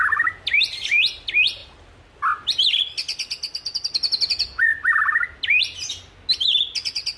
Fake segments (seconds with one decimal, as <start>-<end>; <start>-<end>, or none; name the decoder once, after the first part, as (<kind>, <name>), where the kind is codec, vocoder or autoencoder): none